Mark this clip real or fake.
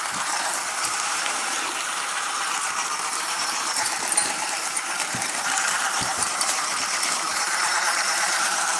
fake